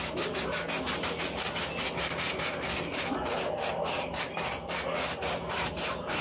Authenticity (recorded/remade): recorded